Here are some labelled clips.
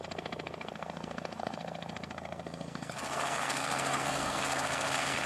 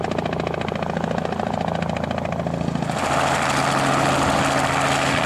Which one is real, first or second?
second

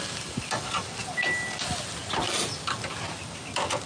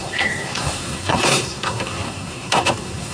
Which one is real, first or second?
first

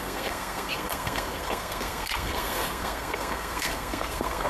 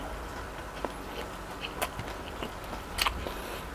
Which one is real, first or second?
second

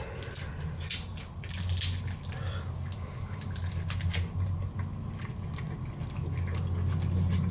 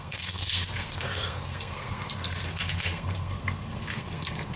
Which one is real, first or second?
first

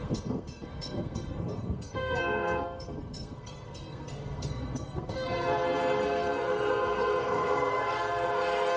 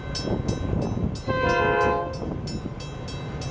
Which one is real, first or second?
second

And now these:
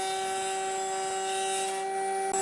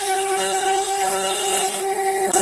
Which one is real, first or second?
first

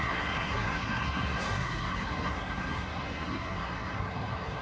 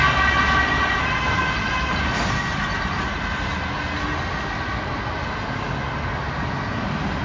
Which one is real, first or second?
second